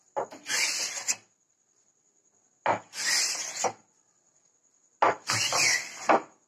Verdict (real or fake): real